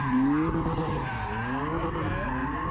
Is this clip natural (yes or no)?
yes